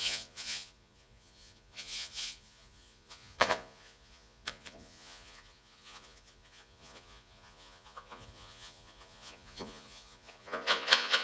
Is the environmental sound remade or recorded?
remade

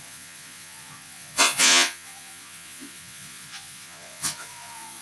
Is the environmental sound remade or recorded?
remade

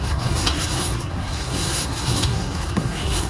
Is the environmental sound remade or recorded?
remade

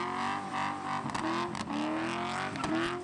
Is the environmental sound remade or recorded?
recorded